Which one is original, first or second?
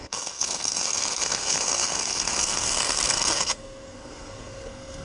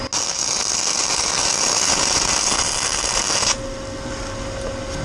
second